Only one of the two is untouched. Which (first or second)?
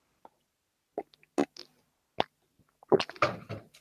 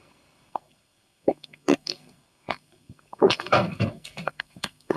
first